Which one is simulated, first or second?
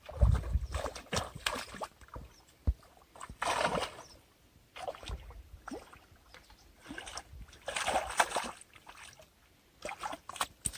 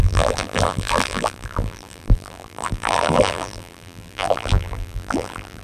second